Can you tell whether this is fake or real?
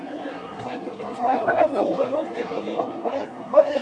fake